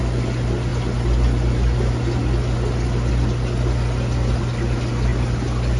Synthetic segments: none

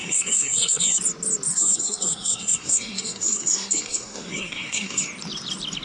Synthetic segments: 0.0-1.0 (codec, SNAC); 1.5-5.0

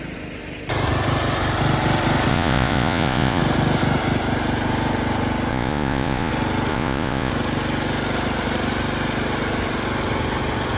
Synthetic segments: 2.3-3.4 (vocoder, Vocos); 5.5-6.3; 6.7-7.3